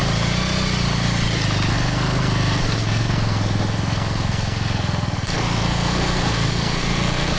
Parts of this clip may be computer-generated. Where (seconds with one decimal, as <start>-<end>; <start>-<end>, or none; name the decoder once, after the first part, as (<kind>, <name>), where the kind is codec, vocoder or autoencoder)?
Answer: 1.7-7.4 (codec, SNAC)